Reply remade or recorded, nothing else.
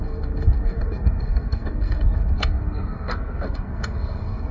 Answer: remade